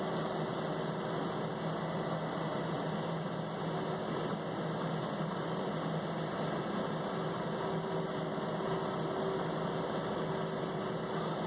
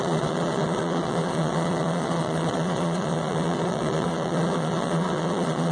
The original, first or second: first